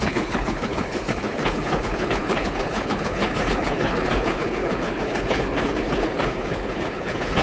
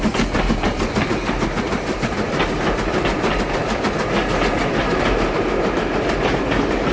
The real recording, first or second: second